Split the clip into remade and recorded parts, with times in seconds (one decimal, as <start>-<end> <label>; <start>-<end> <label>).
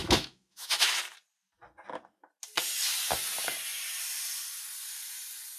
0.0-1.0 remade; 1.0-5.6 recorded